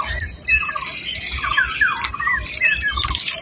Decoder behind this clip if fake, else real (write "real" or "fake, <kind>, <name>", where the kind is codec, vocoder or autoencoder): real